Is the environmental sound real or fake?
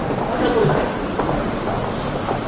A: real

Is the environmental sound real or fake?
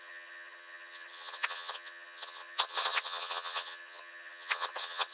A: fake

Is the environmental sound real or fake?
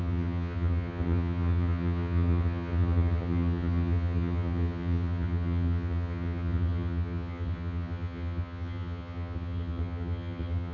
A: fake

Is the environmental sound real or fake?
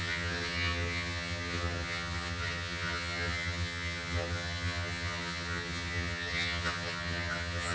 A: fake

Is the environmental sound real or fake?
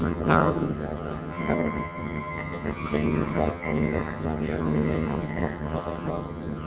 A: fake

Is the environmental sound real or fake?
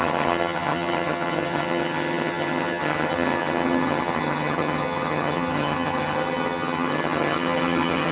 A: fake